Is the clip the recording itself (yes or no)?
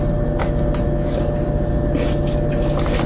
yes